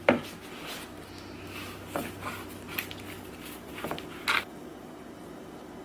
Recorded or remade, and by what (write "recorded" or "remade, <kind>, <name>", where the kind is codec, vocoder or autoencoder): recorded